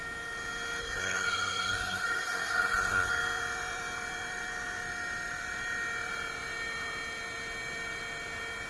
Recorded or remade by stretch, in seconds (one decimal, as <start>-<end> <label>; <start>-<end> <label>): 0.0-0.8 recorded; 0.8-3.1 remade; 3.1-8.7 recorded